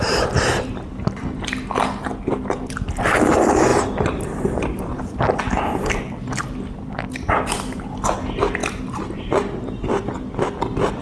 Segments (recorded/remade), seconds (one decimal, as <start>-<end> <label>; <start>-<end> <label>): 0.0-3.7 recorded; 3.7-5.4 remade; 5.4-8.6 recorded; 8.6-10.0 remade; 10.0-11.0 recorded